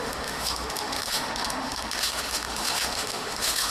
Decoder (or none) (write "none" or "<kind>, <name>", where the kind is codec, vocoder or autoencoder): autoencoder, DAC-VAE